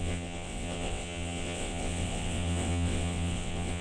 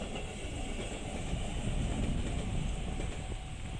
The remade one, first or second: first